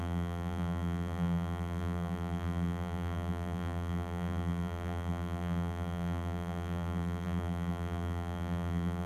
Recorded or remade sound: remade